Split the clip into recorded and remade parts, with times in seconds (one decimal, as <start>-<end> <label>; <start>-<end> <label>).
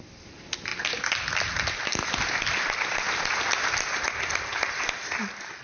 0.0-5.6 recorded